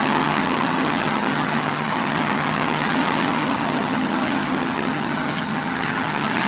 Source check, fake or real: fake